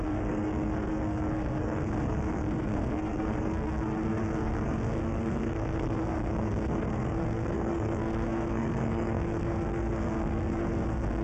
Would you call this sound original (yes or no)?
no